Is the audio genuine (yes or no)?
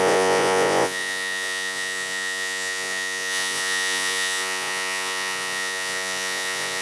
no